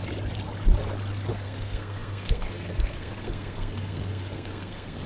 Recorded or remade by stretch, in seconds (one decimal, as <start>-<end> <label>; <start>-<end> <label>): 0.0-1.3 recorded; 1.3-5.1 remade